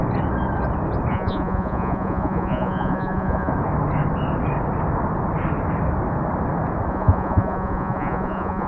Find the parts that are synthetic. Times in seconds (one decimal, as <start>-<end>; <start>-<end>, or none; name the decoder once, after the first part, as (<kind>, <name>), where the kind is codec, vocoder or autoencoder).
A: 1.1-3.5 (vocoder, Vocos); 6.9-8.7